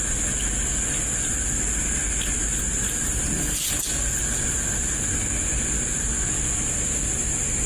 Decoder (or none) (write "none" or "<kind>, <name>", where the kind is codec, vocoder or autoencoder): none